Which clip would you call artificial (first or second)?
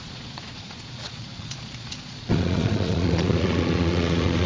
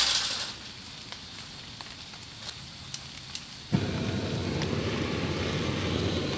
first